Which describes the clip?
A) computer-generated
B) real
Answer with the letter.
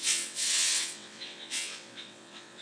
A